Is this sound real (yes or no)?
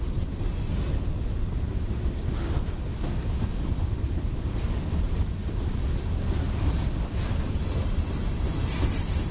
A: yes